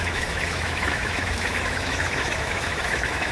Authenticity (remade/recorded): remade